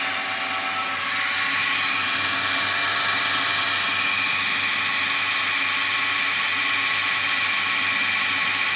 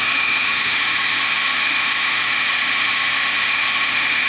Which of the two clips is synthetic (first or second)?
second